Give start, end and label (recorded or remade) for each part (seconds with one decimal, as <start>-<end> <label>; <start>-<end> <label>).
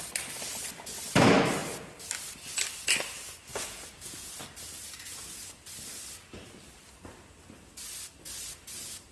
0.0-3.5 recorded; 3.5-4.3 remade; 4.3-9.1 recorded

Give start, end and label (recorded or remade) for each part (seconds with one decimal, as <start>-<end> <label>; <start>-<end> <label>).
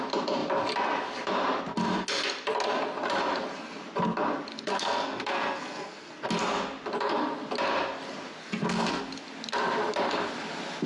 0.0-4.5 recorded; 4.5-6.2 remade; 6.2-8.4 recorded; 8.4-9.0 remade; 9.0-10.9 recorded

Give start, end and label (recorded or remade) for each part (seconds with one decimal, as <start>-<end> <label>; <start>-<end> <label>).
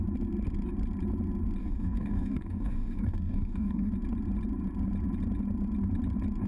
0.0-1.6 recorded; 1.6-3.9 remade; 3.9-6.5 recorded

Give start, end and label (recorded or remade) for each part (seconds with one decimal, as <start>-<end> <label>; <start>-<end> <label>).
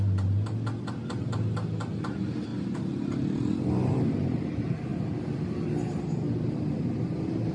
0.0-7.5 recorded